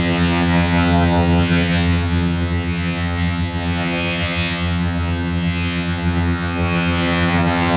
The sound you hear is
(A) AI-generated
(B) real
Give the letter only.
A